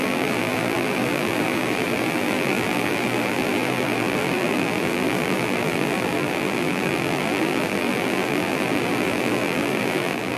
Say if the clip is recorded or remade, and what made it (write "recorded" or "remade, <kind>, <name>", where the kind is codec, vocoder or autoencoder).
remade, vocoder, BigVGAN v2